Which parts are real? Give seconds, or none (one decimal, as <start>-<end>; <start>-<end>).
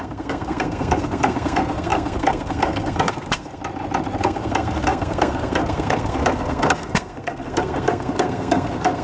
3.6-4.2